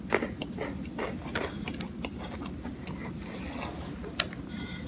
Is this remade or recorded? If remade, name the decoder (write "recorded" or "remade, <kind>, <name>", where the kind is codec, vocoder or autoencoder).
recorded